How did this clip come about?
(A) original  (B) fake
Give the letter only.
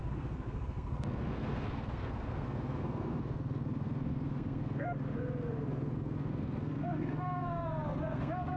B